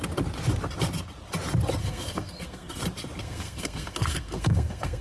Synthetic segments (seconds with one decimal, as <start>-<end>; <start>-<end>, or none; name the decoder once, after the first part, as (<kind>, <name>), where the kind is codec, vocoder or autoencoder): 1.8-2.8 (codec, SNAC); 3.2-5.0